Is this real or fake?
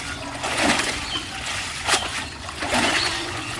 fake